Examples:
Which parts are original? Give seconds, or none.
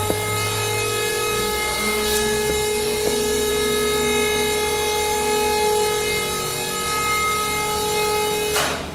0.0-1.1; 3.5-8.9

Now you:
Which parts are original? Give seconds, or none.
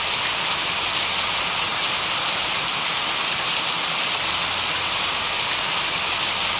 0.0-6.6